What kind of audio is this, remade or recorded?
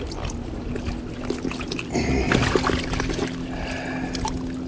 recorded